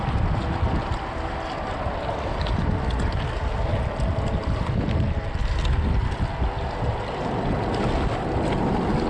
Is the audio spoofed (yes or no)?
no